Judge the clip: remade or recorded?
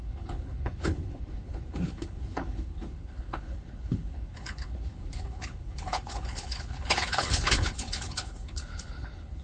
remade